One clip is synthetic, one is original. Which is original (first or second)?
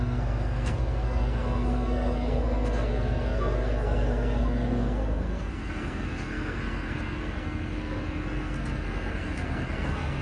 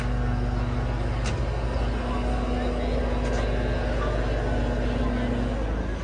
second